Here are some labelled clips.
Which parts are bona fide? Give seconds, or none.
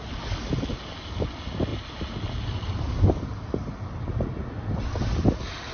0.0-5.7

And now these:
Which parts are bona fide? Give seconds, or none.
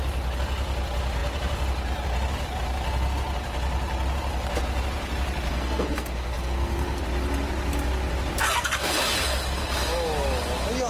0.0-5.5; 7.0-8.4; 9.0-10.9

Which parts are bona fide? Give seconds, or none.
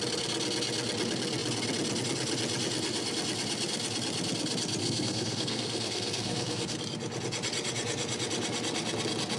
0.0-4.8; 6.8-9.4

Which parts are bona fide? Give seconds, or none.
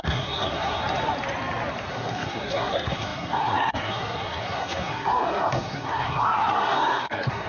0.8-1.9